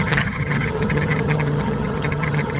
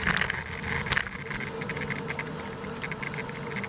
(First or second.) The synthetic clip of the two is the first